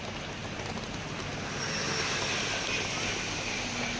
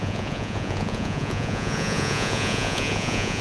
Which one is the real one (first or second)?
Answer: first